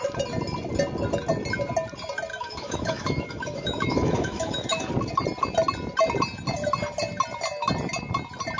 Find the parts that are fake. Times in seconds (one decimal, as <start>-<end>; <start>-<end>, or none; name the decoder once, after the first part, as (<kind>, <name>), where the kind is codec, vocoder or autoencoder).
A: 2.3-4.9 (autoencoder, DAC-VAE)